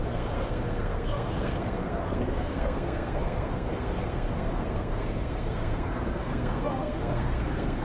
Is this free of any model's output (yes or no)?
no